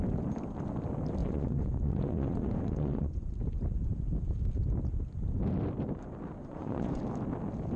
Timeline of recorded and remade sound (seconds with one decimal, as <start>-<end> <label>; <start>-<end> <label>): 0.0-1.2 recorded; 1.2-3.3 remade; 3.3-6.4 recorded; 6.4-7.0 remade; 7.0-7.8 recorded